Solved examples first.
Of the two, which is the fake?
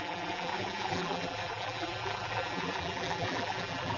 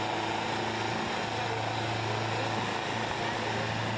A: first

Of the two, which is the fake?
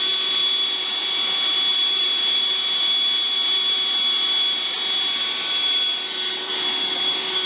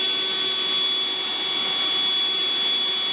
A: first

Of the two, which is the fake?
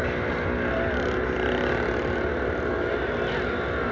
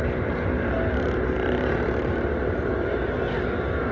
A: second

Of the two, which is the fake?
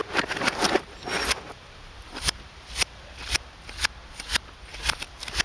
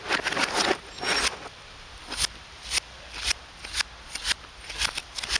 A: first